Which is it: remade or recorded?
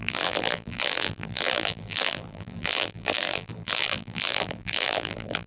remade